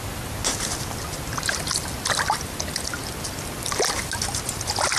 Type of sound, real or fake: real